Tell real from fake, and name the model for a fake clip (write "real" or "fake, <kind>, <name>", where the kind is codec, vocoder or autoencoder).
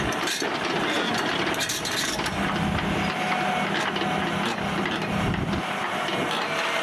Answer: real